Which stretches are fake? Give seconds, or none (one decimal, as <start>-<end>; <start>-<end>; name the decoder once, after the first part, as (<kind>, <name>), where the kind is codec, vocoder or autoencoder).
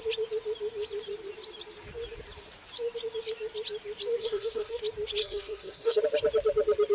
4.2-4.8 (codec, SNAC); 5.2-6.0